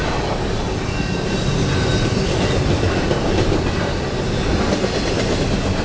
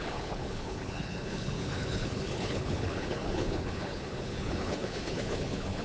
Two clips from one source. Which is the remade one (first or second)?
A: second